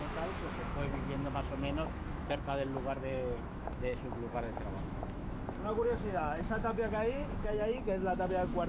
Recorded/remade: remade